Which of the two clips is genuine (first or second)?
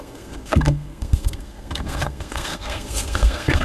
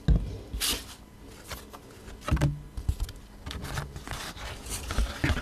second